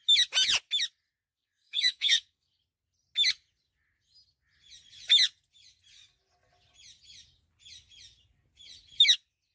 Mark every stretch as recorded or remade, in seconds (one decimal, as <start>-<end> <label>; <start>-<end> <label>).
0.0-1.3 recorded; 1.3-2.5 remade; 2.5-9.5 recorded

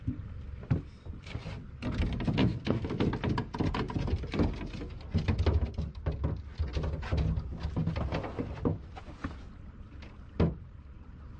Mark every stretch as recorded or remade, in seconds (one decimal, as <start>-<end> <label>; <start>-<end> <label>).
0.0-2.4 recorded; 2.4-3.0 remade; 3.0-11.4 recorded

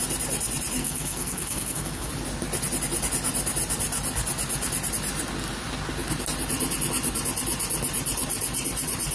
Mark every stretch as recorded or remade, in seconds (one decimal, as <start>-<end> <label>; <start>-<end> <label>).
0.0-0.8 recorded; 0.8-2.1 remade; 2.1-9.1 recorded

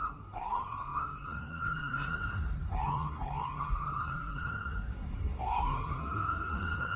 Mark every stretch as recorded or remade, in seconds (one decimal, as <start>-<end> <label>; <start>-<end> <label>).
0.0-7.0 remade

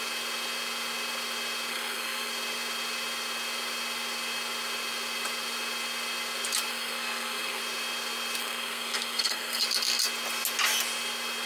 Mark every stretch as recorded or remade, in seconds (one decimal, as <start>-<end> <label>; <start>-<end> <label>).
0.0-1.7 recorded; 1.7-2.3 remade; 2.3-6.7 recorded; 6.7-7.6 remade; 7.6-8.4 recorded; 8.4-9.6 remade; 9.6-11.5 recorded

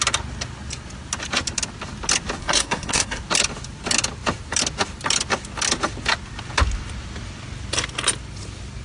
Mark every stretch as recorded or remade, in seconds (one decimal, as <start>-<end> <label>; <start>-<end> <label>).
0.0-2.4 recorded; 2.4-3.2 remade; 3.2-8.8 recorded